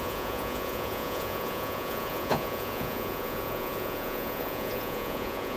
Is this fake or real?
fake